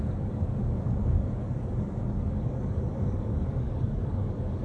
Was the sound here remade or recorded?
remade